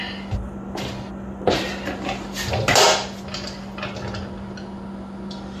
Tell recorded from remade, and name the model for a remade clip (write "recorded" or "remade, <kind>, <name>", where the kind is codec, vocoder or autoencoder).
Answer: recorded